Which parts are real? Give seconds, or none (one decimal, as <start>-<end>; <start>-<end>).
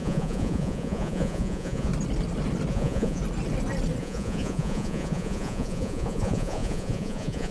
1.9-2.7; 3.2-4.0